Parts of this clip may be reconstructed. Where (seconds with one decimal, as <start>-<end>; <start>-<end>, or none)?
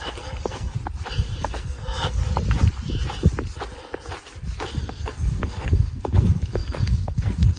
0.0-0.8; 1.4-2.2; 4.8-7.6